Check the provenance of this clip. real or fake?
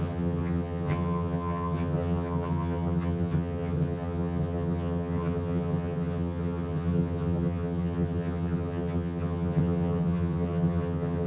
fake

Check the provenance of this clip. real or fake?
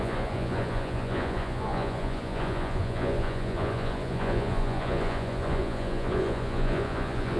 fake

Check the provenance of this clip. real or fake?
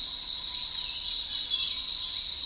real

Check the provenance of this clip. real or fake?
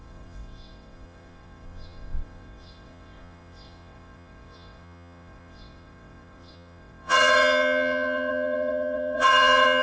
fake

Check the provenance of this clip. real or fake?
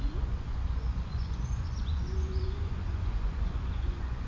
fake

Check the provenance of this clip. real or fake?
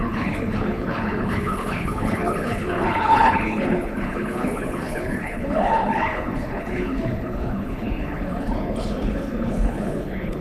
fake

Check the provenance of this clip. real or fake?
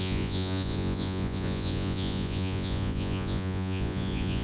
fake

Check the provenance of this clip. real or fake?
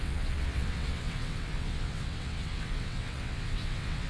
fake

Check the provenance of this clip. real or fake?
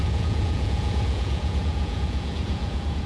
fake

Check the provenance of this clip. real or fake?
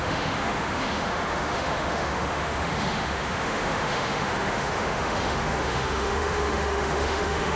fake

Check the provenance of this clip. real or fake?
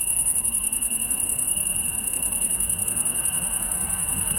fake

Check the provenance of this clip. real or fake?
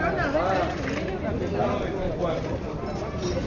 real